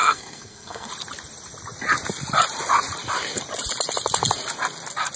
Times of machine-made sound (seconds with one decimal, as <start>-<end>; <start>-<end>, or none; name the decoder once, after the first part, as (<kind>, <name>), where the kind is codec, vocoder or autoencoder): 0.0-0.9 (codec, SNAC)